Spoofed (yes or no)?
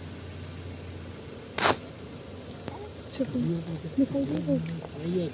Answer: no